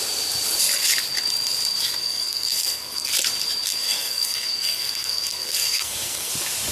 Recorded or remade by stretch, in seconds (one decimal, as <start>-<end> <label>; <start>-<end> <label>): 0.0-2.0 recorded; 2.0-3.1 remade; 3.1-3.7 recorded; 3.7-6.3 remade; 6.3-6.7 recorded

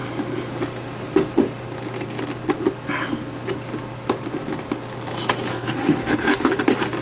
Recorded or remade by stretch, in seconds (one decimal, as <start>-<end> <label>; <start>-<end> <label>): 0.0-5.5 recorded; 5.5-6.5 remade; 6.5-7.0 recorded